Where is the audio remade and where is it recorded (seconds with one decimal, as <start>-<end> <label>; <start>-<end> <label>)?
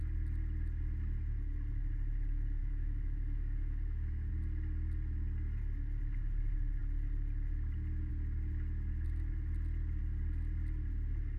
0.0-2.6 recorded; 2.6-4.3 remade; 4.3-11.4 recorded